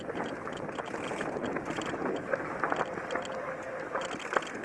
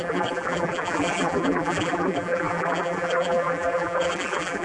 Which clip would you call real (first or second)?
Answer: first